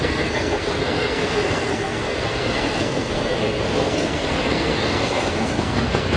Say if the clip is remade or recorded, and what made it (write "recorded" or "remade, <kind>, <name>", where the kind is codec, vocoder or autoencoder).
remade, codec, SNAC